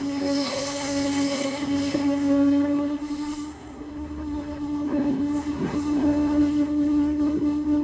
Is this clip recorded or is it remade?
remade